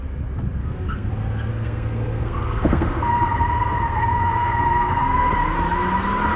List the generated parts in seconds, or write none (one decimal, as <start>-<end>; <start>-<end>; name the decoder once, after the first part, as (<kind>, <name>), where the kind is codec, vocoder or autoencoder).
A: 0.6-1.1 (codec, SNAC); 1.5-5.3